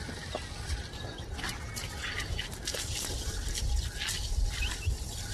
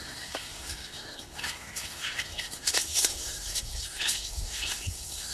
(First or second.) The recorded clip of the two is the first